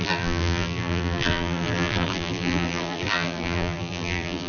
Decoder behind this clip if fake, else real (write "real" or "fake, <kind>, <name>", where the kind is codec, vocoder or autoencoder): fake, vocoder, BigVGAN v2